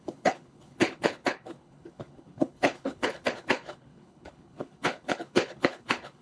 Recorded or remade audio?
remade